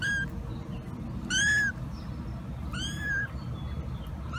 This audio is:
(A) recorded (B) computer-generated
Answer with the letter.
A